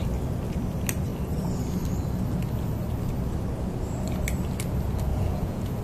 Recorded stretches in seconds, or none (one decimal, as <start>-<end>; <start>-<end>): 0.0-5.1